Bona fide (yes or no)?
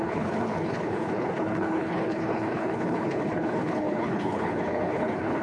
no